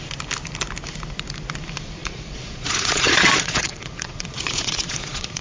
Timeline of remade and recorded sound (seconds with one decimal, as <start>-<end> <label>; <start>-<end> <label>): 0.0-2.0 recorded; 2.0-5.4 remade